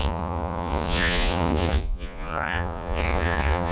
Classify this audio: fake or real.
fake